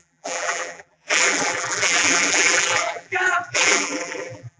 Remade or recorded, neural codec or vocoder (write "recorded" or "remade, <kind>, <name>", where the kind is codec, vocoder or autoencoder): remade, vocoder, BigVGAN v2